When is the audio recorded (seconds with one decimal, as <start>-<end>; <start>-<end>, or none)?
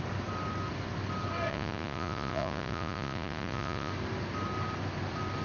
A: 0.0-1.5; 3.9-5.4